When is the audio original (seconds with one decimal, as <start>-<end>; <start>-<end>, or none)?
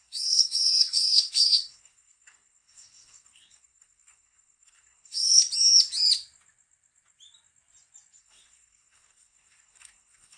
5.4-8.2